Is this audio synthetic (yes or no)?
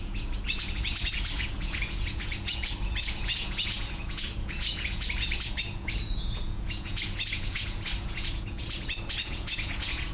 yes